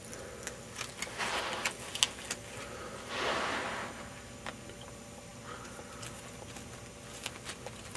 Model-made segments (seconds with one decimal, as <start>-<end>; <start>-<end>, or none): none